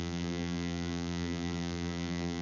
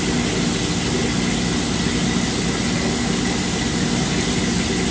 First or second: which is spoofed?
first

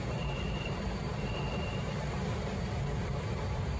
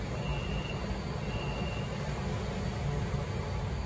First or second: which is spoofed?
first